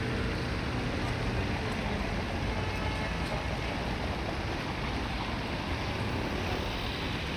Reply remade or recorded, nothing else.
recorded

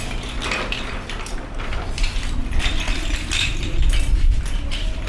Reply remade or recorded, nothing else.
recorded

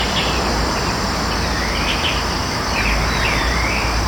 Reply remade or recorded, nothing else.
remade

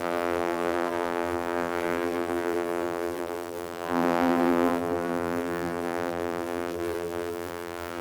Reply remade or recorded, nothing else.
remade